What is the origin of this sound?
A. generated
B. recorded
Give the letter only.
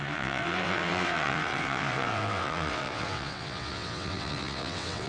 A